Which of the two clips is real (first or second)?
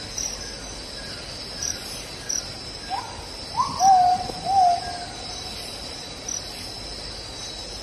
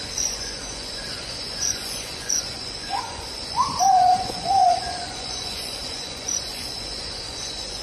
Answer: first